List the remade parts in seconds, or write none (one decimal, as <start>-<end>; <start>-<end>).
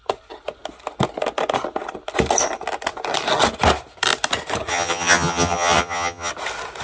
4.7-6.3